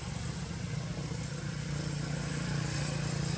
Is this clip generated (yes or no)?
no